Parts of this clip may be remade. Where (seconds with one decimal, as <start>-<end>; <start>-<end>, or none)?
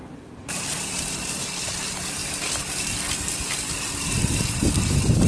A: 0.0-2.2; 3.1-5.3